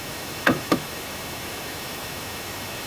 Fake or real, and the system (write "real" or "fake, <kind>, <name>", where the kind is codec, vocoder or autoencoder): fake, autoencoder, DAC-VAE